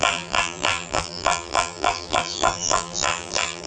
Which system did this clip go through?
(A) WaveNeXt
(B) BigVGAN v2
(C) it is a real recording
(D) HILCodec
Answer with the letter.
B